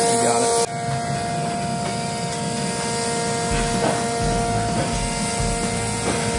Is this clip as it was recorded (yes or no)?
yes